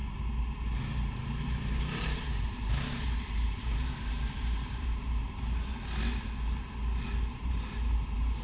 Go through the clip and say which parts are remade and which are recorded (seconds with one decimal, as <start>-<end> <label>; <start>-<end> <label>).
0.0-0.8 recorded; 0.8-5.7 remade; 5.7-7.0 recorded; 7.0-8.4 remade

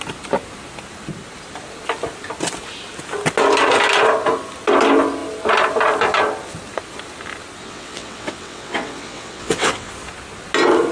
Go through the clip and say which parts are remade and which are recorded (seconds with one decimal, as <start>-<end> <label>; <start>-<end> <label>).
0.0-7.6 recorded; 7.6-9.9 remade; 9.9-10.9 recorded

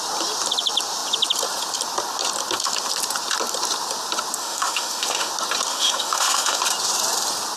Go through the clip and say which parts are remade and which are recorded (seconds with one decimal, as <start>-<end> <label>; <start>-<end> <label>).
0.0-4.4 recorded; 4.4-5.3 remade; 5.3-5.7 recorded; 5.7-6.6 remade; 6.6-7.6 recorded

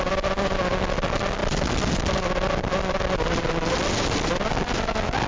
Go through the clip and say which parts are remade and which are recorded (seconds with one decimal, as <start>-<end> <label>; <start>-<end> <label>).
0.0-5.3 recorded

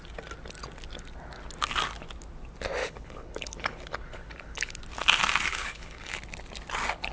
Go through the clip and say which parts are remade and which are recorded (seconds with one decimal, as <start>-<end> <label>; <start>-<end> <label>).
0.0-2.8 recorded; 2.8-4.8 remade; 4.8-5.5 recorded; 5.5-6.1 remade; 6.1-7.1 recorded

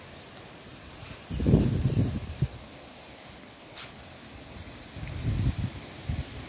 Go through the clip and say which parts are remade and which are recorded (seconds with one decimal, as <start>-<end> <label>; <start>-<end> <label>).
0.0-3.4 recorded; 3.4-4.0 remade; 4.0-6.5 recorded

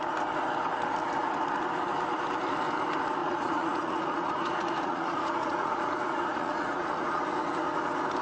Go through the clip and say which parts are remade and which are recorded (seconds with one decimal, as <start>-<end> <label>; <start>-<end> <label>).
0.0-3.2 recorded; 3.2-7.2 remade; 7.2-8.2 recorded

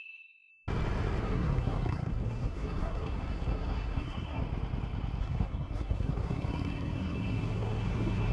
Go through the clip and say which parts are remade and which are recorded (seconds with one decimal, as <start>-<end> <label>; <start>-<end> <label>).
0.0-0.5 remade; 0.5-1.2 recorded; 1.2-4.4 remade; 4.4-5.2 recorded; 5.2-8.3 remade